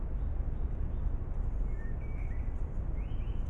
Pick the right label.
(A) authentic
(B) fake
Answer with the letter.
A